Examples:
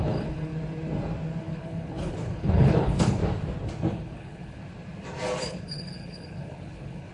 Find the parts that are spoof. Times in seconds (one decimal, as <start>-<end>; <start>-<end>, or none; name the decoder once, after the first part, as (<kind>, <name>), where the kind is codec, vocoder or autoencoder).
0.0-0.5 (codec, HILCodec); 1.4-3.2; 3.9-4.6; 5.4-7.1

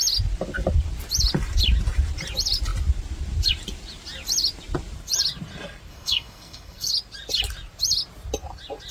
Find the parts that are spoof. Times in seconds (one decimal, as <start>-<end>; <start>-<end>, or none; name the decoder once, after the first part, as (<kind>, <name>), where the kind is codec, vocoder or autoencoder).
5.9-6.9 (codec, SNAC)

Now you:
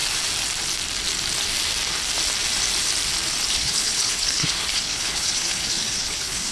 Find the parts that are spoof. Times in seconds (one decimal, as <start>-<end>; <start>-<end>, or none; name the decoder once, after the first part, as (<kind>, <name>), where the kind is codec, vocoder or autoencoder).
3.5-6.5 (codec, HILCodec)

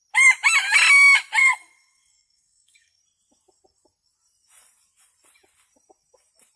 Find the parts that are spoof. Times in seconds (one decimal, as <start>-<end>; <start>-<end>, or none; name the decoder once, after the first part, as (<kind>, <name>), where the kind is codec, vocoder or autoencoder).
1.4-3.0 (codec, SNAC)

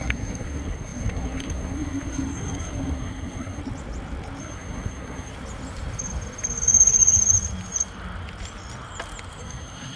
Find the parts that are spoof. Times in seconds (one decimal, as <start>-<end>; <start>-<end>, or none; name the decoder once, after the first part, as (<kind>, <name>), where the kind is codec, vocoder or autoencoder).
0.0-3.6 (codec, SNAC); 4.4-5.3; 9.4-10.0

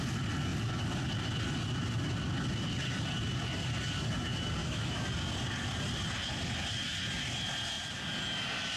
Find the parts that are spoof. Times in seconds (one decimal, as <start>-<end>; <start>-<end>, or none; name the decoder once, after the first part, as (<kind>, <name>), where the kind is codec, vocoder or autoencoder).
4.6-5.1 (autoencoder, DAC-VAE)